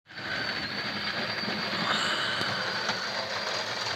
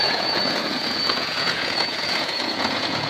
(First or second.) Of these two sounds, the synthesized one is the second